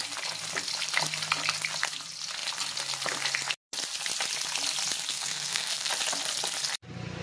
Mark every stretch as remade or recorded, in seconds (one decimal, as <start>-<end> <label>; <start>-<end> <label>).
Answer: 0.0-5.1 recorded; 5.1-5.9 remade; 5.9-7.2 recorded